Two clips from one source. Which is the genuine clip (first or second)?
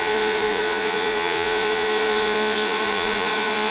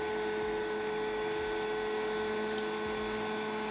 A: second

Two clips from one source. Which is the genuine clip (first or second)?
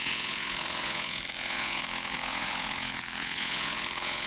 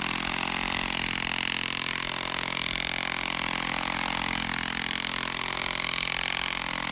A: second